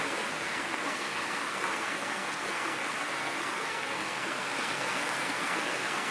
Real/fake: fake